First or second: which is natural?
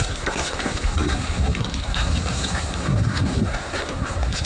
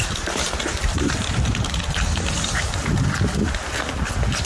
second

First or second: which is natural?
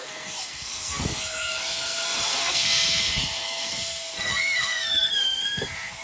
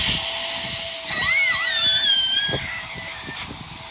second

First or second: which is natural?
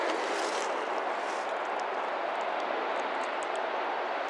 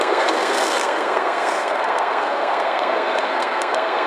first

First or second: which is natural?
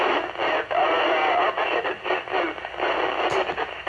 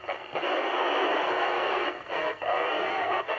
first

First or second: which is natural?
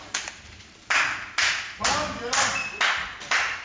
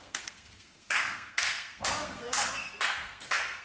first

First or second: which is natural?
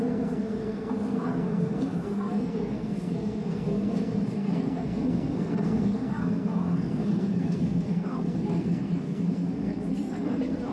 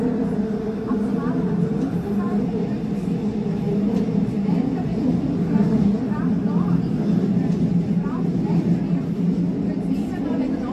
second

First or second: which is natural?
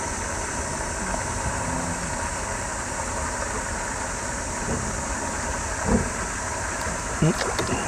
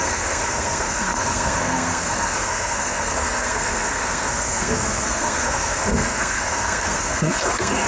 first